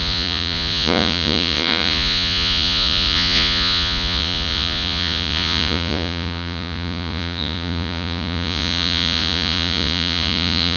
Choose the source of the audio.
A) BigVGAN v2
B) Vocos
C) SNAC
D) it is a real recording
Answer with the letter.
B